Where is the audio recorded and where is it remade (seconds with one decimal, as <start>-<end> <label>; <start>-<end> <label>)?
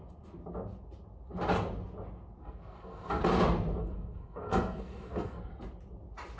0.0-2.4 recorded; 2.4-3.2 remade; 3.2-3.8 recorded; 3.8-5.5 remade; 5.5-6.4 recorded